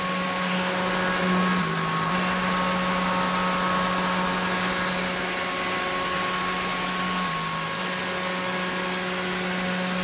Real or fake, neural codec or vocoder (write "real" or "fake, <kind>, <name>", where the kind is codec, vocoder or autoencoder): real